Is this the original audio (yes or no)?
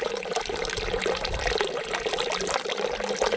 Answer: yes